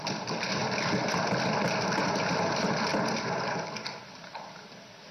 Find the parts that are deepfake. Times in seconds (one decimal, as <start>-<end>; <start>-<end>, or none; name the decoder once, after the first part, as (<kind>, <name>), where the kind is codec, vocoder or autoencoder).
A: none